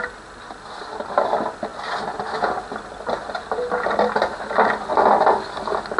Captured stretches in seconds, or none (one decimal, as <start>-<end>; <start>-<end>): 0.0-6.0